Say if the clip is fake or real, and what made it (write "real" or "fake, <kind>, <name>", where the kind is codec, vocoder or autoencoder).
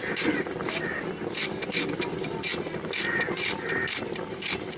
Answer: real